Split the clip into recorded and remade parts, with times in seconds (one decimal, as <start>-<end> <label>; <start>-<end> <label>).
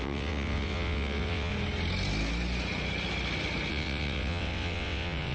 0.0-1.5 remade; 1.5-3.7 recorded; 3.7-5.3 remade